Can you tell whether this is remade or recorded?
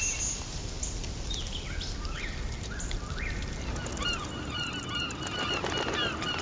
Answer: recorded